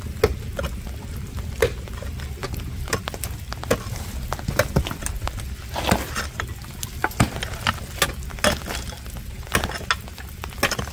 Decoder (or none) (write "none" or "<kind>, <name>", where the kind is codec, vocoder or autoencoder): none